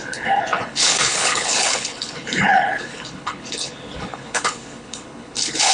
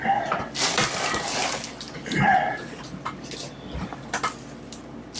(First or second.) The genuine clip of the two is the second